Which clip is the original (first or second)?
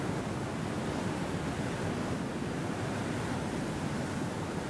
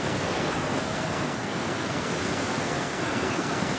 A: first